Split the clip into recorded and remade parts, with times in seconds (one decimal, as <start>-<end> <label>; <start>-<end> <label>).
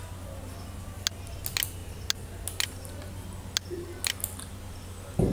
0.0-5.3 recorded